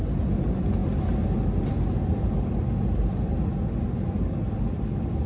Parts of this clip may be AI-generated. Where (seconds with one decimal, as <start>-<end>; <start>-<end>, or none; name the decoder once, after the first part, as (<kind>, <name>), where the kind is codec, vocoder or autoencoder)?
none